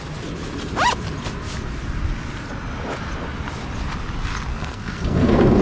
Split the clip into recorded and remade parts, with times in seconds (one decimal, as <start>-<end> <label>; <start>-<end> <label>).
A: 0.0-4.5 recorded; 4.5-5.6 remade